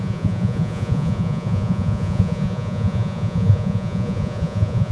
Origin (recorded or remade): remade